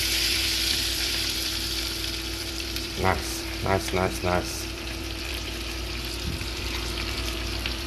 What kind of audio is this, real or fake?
fake